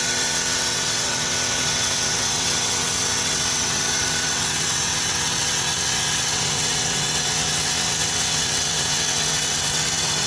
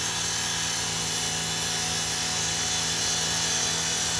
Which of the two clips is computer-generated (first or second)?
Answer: first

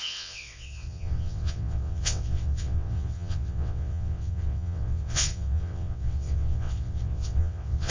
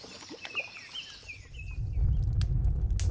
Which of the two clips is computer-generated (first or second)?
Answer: first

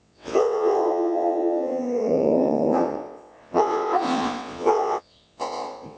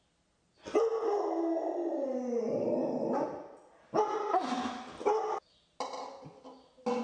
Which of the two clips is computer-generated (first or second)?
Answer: first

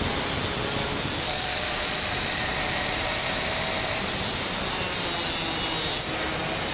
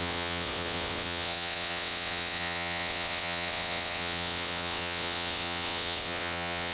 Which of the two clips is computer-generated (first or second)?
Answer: second